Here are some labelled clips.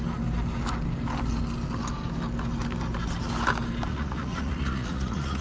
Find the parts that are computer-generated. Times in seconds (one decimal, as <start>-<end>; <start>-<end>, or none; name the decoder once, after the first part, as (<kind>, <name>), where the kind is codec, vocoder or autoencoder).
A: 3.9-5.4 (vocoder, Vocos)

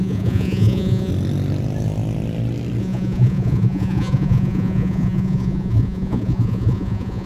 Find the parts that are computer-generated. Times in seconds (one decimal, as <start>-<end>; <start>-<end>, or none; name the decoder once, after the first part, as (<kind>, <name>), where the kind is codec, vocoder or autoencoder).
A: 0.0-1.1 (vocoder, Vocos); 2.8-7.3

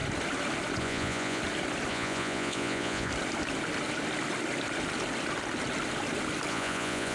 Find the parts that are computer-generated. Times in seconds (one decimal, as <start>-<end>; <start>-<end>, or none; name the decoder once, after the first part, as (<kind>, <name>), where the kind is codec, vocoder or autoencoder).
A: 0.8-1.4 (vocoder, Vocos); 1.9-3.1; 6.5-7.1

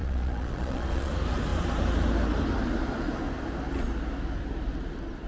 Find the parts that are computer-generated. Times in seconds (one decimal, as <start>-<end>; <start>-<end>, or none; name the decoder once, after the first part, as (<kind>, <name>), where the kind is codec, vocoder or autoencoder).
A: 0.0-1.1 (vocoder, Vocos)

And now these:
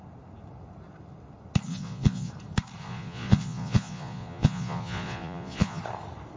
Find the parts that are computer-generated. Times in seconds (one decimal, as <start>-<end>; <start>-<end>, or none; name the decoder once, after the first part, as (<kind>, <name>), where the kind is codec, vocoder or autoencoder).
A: 1.7-2.3 (vocoder, Vocos); 2.8-5.8